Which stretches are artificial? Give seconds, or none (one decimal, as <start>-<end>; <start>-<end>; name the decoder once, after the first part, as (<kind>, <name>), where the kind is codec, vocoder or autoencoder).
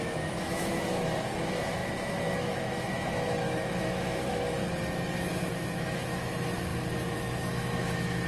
0.0-4.6 (autoencoder, DAC-VAE); 5.2-8.3